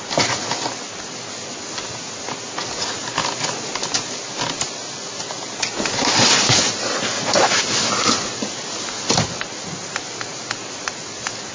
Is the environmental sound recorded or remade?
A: recorded